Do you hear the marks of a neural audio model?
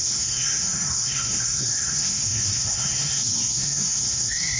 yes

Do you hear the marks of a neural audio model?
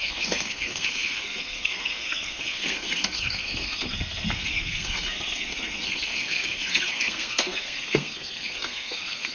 yes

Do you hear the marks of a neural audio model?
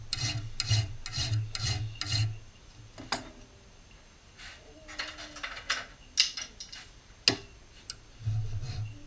no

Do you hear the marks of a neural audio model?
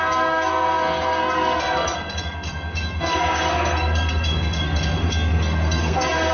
yes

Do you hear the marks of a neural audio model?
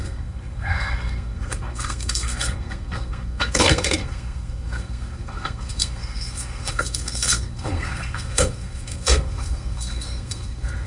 yes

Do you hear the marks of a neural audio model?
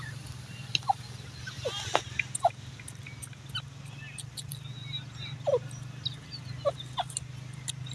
no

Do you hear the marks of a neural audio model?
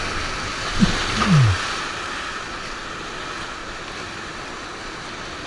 no